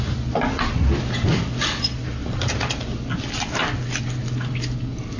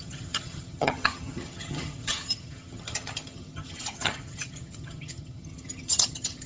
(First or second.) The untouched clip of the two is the first